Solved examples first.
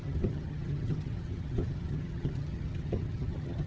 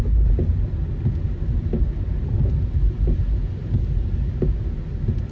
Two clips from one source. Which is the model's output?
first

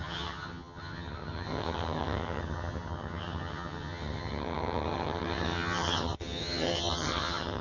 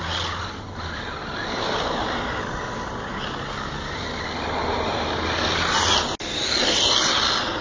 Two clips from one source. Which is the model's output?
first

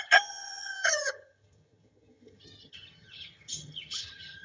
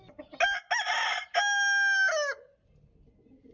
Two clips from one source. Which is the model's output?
first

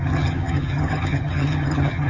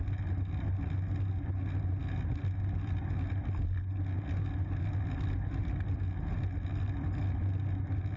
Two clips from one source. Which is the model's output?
first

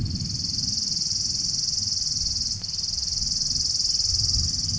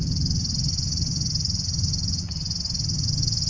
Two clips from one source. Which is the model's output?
second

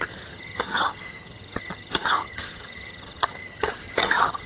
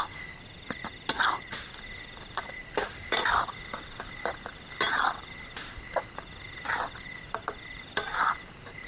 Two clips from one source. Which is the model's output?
first